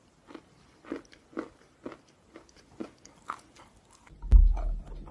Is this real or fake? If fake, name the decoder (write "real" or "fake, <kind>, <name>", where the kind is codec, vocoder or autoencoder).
real